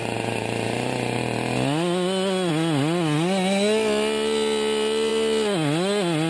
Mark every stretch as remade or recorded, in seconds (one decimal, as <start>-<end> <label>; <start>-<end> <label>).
0.0-6.3 recorded